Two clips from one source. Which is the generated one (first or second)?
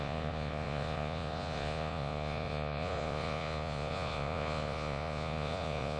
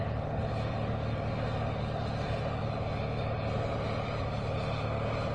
first